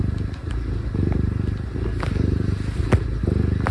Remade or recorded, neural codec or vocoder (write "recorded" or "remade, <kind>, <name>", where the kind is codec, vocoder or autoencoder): recorded